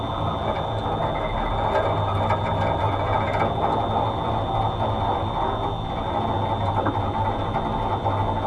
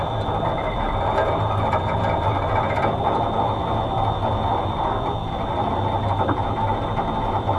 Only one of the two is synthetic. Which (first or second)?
second